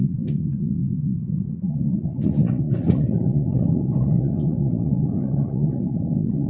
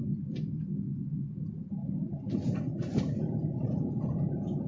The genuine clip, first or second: second